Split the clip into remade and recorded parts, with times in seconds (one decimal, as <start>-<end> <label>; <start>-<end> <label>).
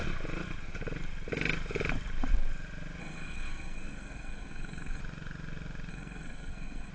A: 0.0-3.0 recorded; 3.0-5.0 remade; 5.0-5.9 recorded; 5.9-6.9 remade